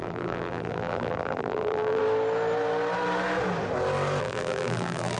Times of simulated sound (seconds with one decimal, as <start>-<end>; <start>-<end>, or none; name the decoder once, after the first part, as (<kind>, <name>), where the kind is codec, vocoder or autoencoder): 0.0-2.0 (vocoder, BigVGAN v2); 4.2-5.2